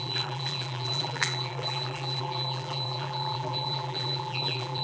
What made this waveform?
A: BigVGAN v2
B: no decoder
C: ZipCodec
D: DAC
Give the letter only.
A